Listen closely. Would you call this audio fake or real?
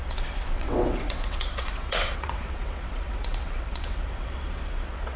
fake